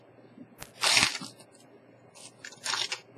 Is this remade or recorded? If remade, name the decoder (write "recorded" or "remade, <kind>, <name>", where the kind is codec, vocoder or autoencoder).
recorded